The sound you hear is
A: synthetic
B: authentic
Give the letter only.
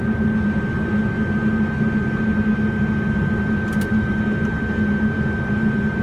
B